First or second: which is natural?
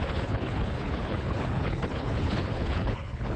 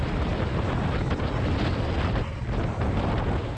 second